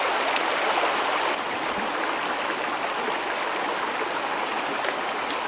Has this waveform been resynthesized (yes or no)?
no